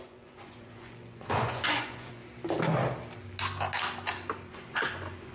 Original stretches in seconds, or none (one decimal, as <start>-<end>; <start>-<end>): 2.2-4.5